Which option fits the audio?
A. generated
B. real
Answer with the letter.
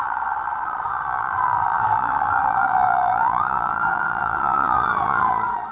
A